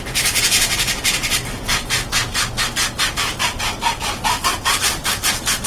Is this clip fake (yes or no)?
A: no